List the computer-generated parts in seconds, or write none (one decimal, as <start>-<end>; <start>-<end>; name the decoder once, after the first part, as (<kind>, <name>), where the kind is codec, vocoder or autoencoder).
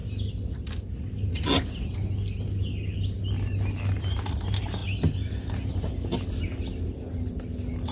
none